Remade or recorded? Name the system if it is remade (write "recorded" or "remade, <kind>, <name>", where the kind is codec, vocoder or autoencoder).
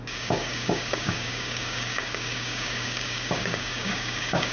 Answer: remade, codec, DAC